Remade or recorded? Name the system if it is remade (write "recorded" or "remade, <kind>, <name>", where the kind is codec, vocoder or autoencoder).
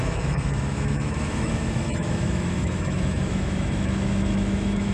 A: remade, autoencoder, DAC-VAE